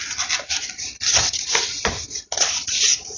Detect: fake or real real